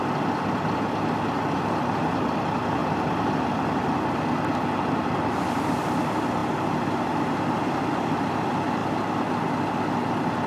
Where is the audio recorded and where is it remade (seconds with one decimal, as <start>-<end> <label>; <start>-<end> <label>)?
0.0-10.5 recorded